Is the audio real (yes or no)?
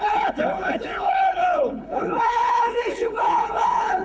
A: no